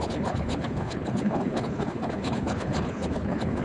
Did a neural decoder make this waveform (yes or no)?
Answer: yes